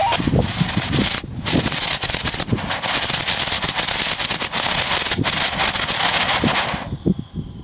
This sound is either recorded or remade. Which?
recorded